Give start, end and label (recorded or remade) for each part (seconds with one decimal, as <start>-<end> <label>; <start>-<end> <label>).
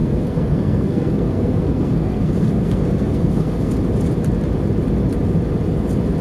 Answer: 0.0-3.7 remade; 3.7-6.2 recorded